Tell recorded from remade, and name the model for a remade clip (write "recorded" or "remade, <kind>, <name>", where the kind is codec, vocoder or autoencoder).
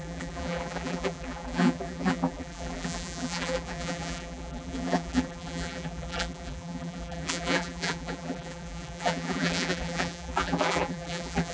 remade, vocoder, BigVGAN v2